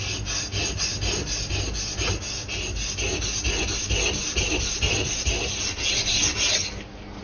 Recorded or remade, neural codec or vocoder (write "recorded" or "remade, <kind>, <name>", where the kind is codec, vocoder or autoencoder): recorded